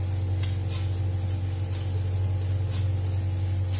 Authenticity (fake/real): real